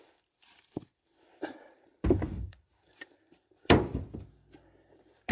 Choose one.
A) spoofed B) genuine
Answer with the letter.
A